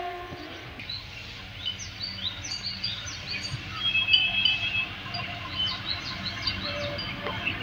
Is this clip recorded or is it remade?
recorded